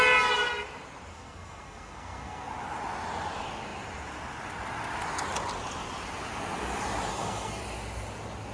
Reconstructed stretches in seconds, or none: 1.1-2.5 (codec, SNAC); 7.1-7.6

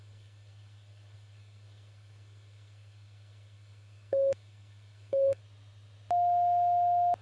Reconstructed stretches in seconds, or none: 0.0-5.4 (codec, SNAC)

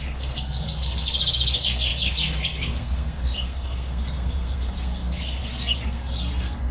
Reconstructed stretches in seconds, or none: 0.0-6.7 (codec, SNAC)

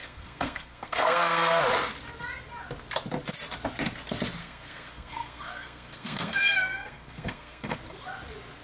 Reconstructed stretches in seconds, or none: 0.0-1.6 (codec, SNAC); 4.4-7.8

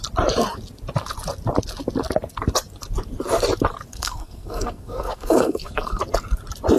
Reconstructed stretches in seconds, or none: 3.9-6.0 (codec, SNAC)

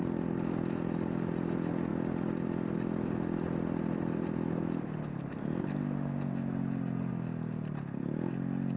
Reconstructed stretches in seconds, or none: none